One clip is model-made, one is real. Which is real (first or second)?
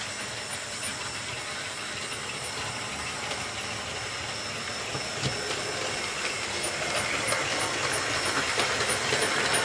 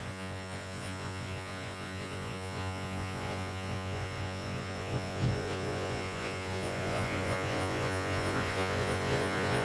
first